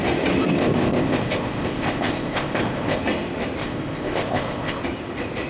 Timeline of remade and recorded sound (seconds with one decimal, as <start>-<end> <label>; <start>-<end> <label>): 0.0-0.6 recorded; 0.6-3.0 remade; 3.0-3.6 recorded; 3.6-4.8 remade; 4.8-5.5 recorded

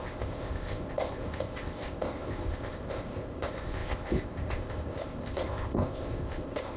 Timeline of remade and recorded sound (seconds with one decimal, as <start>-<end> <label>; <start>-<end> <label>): 0.0-6.8 remade

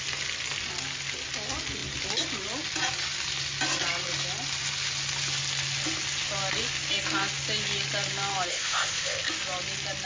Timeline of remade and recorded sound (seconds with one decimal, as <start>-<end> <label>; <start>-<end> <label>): 0.0-8.5 recorded; 8.5-9.3 remade; 9.3-10.1 recorded

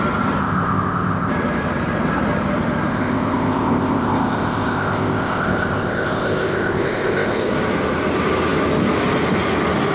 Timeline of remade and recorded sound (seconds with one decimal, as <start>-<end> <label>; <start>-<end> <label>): 0.0-0.4 recorded; 0.4-1.3 remade; 1.3-2.9 recorded; 2.9-7.5 remade; 7.5-9.9 recorded

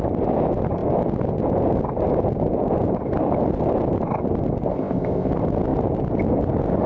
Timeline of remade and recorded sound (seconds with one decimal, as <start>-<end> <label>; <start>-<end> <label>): 0.0-4.7 recorded; 4.7-5.3 remade; 5.3-6.9 recorded